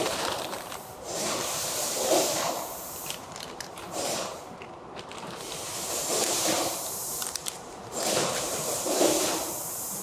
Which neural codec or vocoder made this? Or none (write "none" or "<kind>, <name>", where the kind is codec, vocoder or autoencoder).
vocoder, BigVGAN v2